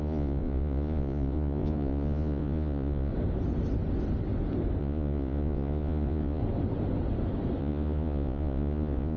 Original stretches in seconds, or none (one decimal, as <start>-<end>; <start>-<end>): 3.1-4.8; 6.4-7.6